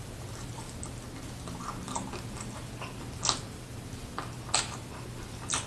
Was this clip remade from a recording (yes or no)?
no